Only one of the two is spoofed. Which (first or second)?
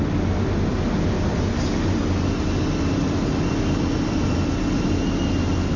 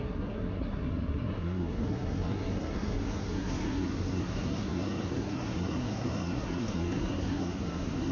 second